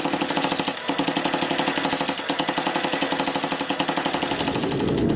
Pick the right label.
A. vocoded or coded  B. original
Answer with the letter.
B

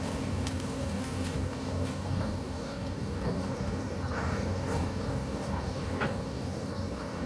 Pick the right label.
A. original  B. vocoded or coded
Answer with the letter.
B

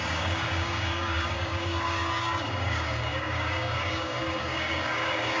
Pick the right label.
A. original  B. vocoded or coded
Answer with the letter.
B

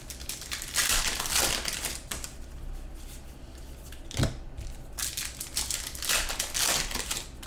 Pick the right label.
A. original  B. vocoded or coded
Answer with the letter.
A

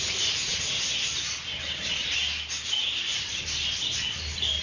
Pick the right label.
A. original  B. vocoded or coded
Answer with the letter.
A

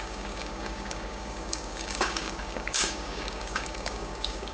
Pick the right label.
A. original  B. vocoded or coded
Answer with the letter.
B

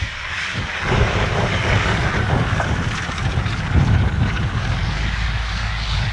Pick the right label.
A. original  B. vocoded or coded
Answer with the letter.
B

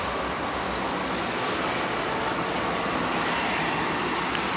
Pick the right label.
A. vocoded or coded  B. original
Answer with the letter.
B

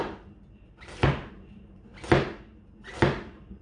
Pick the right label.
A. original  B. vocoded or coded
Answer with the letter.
A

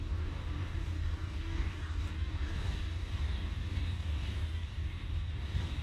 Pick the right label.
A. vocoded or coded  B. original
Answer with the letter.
A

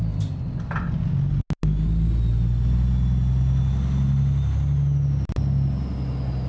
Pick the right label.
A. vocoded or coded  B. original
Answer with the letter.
B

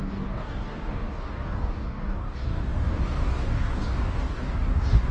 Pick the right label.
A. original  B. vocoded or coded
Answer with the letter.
B